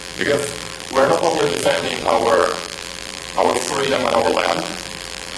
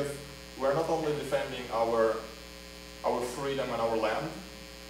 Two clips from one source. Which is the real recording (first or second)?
second